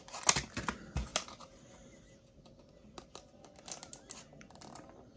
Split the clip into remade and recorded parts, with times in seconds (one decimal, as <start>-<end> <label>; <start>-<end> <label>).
0.0-5.2 recorded